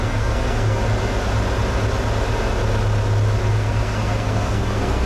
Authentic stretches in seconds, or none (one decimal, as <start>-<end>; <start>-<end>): 0.8-3.5